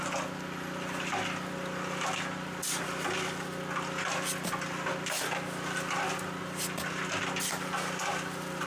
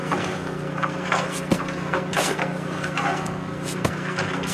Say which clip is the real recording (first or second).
first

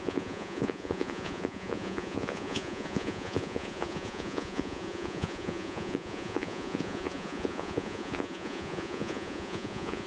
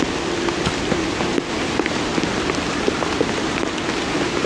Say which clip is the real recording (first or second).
second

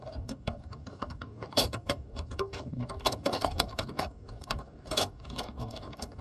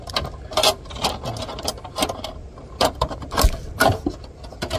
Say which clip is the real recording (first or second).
second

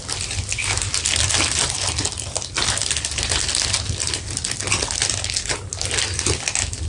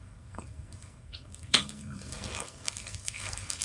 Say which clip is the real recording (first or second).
first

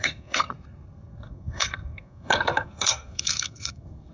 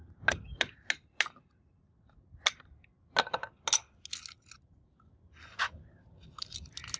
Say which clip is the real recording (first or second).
second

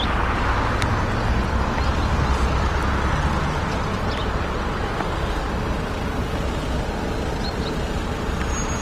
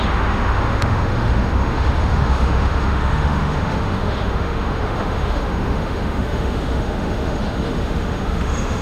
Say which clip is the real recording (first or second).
first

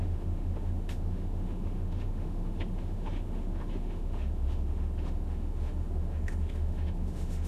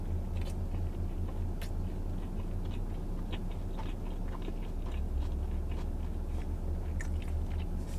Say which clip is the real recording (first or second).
second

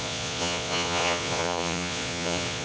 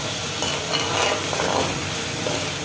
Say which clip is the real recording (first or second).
second